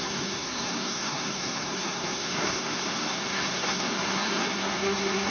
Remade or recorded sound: remade